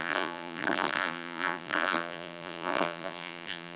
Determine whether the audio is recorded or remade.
remade